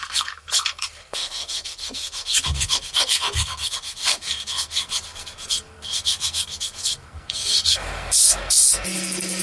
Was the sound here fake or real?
fake